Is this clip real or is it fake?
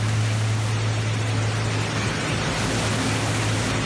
real